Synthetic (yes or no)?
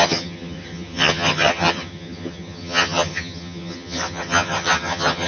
yes